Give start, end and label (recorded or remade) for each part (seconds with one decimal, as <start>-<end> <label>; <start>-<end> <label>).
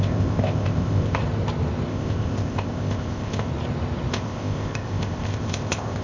0.0-1.2 remade; 1.2-1.9 recorded; 1.9-3.5 remade; 3.5-4.1 recorded; 4.1-6.0 remade